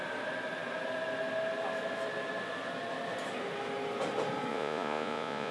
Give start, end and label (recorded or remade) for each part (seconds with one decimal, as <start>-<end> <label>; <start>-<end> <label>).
0.0-4.5 recorded; 4.5-5.5 remade